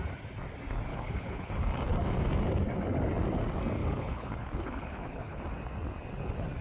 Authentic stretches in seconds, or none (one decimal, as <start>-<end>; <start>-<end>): 0.0-0.9; 1.5-3.8; 5.4-6.6